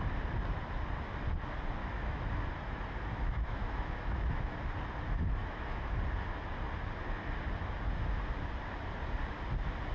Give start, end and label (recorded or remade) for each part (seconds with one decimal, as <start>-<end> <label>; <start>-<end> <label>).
0.0-1.8 recorded; 1.8-2.3 remade; 2.3-3.1 recorded; 3.1-4.4 remade; 4.4-5.4 recorded; 5.4-6.0 remade; 6.0-9.9 recorded